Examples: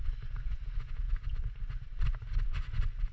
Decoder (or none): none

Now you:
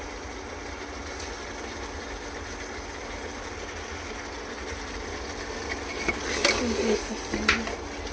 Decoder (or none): none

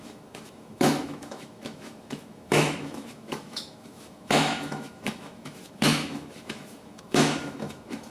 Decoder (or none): autoencoder, DAC-VAE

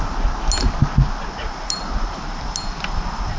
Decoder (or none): none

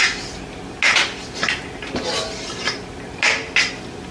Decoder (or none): none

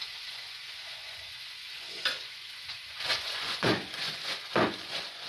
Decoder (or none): vocoder, Vocos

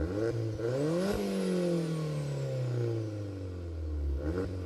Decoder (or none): none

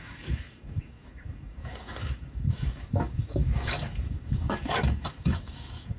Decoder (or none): codec, DAC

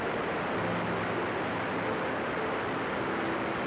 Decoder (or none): none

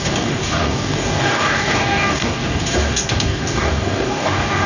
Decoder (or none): codec, DAC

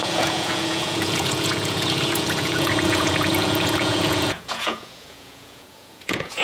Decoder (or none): vocoder, Vocos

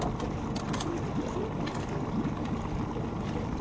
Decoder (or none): none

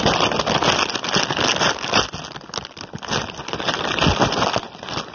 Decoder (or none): none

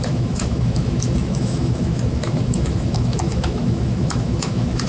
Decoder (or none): autoencoder, DAC-VAE